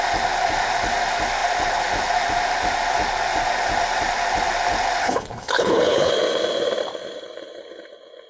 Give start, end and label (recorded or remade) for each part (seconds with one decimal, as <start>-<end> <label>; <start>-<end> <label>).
0.0-5.0 recorded; 5.0-6.1 remade; 6.1-8.3 recorded